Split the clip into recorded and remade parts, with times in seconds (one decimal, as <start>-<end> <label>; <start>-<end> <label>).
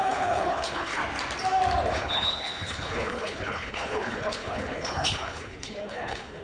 0.0-1.0 remade; 1.0-1.9 recorded; 1.9-6.4 remade